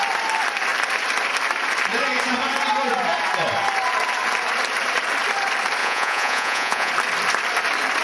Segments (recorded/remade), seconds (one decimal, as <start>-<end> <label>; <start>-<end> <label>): 0.0-5.8 recorded; 5.8-6.9 remade; 6.9-8.0 recorded